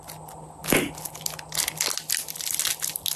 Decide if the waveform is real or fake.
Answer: real